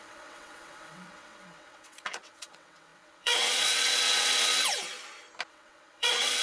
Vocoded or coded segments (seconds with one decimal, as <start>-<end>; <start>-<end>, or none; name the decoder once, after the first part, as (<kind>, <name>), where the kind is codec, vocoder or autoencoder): 0.0-4.5 (vocoder, WaveNeXt); 5.5-6.4